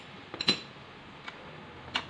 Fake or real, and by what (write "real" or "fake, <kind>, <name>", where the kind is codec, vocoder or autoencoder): real